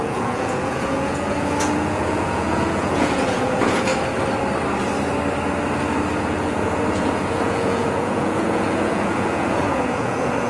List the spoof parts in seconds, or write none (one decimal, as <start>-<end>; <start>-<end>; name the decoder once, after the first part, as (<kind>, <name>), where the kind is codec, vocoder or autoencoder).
0.0-3.9 (vocoder, Vocos); 6.2-10.5